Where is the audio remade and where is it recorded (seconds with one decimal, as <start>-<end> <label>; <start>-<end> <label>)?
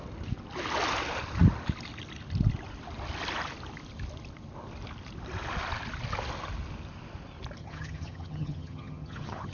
0.0-7.6 recorded; 7.6-9.5 remade